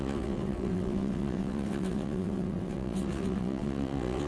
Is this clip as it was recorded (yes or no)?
no